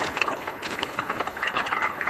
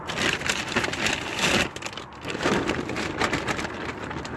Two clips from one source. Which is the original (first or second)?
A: second